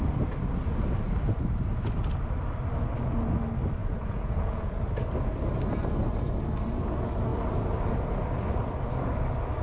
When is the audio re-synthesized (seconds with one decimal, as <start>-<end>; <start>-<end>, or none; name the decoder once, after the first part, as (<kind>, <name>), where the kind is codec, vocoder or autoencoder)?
3.8-4.7 (vocoder, Vocos)